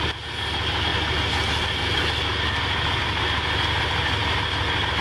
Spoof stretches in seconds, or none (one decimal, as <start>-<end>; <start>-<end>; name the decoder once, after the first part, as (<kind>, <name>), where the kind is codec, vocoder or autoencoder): none